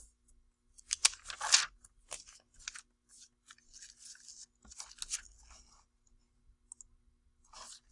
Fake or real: real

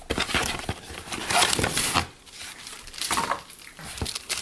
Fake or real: real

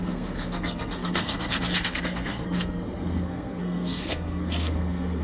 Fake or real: fake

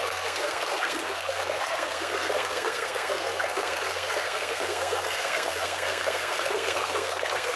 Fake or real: fake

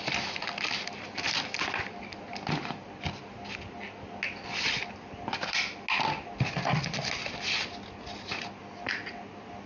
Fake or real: real